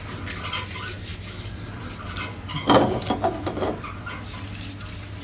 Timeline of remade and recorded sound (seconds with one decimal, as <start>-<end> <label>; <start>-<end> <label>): 0.0-5.2 recorded